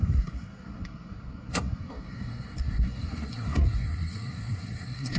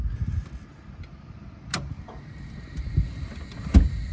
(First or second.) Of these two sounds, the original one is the second